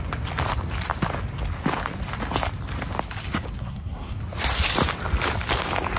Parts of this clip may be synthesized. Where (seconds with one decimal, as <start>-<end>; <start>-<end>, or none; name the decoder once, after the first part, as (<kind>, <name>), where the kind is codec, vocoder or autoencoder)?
3.6-4.2 (codec, SNAC)